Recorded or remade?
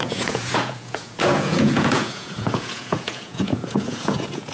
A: remade